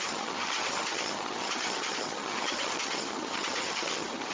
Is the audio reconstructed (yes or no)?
yes